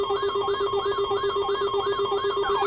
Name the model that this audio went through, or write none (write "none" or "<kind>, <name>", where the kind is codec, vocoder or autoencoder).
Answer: none